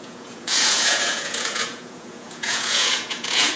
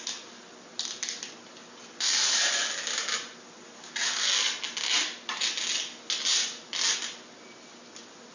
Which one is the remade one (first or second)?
first